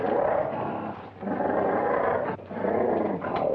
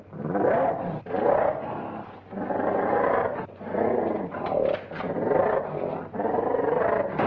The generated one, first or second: first